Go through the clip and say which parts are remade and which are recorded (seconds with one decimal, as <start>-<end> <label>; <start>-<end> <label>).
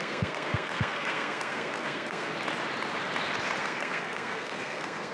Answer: 0.0-2.3 remade; 2.3-3.6 recorded; 3.6-5.1 remade